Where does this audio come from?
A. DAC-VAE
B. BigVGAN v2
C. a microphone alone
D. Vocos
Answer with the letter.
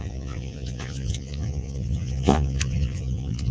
D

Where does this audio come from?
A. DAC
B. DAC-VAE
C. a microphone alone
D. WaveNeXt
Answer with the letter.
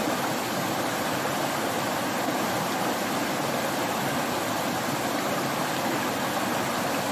C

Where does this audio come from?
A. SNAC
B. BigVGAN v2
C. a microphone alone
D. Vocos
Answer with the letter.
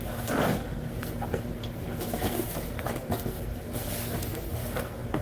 A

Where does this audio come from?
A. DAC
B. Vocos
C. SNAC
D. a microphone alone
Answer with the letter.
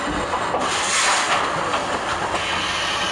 D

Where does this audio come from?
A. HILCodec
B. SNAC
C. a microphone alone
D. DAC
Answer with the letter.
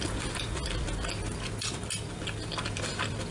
C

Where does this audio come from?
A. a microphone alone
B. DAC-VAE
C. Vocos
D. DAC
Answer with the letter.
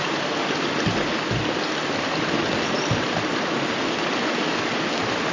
A